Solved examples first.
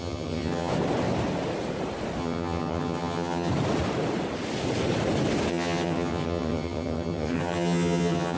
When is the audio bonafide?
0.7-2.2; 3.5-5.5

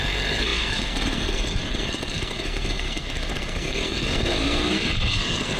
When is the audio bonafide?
none

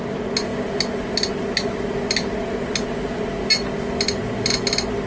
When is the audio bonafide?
0.0-5.1

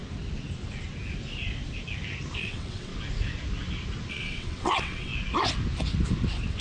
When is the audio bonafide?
0.0-2.4; 2.9-4.1; 5.1-6.6

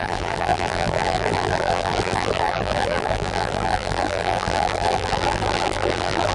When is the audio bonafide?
none

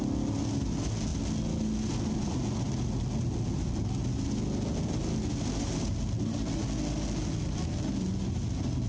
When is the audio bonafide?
0.0-8.9

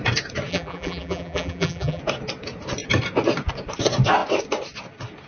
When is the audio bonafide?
0.0-0.5; 2.0-5.3